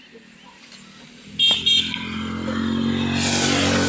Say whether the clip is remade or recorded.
recorded